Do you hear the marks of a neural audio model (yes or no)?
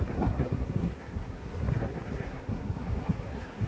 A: yes